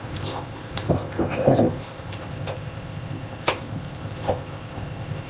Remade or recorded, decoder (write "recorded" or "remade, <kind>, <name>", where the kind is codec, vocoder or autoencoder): remade, codec, ZipCodec